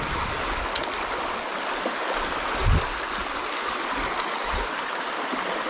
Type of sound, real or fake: real